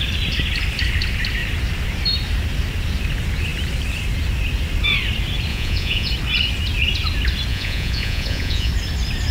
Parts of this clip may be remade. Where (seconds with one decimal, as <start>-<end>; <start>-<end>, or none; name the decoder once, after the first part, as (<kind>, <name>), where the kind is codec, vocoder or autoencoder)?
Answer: 5.5-6.1 (vocoder, Vocos); 7.5-8.7